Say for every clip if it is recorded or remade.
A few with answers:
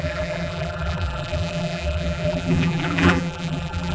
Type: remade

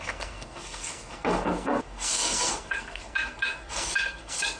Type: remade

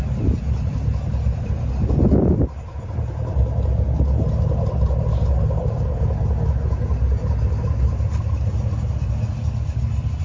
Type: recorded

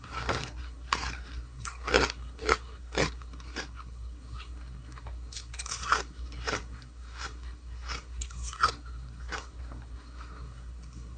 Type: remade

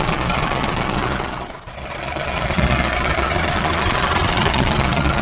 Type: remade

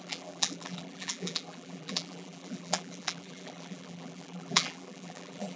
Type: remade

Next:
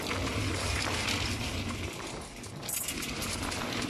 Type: recorded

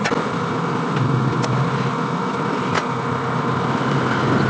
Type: recorded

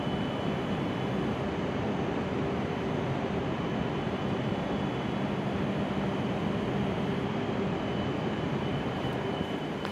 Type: remade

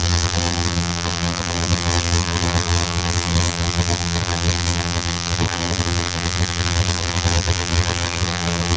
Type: remade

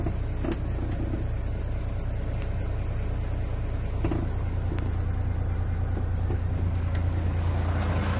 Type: recorded